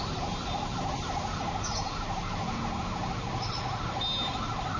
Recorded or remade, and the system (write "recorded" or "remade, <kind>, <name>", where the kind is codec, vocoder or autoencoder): recorded